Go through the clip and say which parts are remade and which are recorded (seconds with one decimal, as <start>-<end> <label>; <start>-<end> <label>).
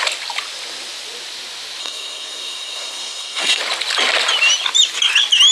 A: 0.0-1.8 recorded; 1.8-3.6 remade; 3.6-5.5 recorded